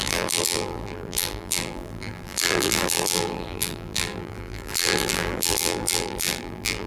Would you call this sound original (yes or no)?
no